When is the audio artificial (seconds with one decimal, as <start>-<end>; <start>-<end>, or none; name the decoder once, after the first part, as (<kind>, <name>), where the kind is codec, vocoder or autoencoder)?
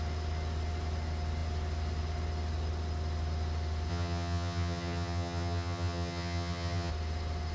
3.9-6.9 (vocoder, HiFi-GAN)